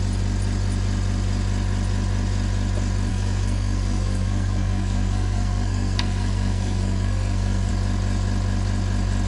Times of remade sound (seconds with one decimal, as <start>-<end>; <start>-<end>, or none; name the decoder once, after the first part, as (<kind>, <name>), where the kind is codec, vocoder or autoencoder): 3.1-7.7 (codec, SNAC)